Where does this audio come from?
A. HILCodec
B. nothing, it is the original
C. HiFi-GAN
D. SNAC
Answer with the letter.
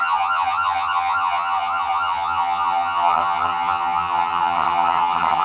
C